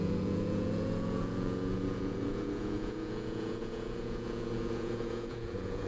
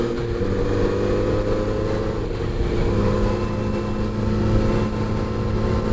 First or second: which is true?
second